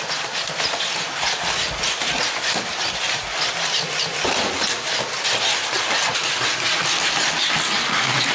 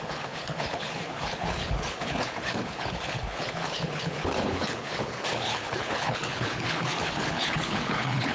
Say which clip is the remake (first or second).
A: second